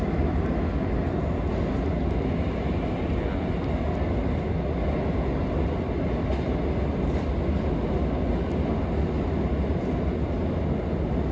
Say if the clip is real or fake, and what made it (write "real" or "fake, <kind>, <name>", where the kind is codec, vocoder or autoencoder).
real